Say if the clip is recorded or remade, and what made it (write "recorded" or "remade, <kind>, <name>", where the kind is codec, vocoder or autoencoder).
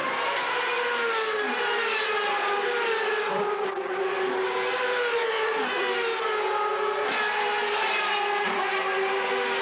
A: recorded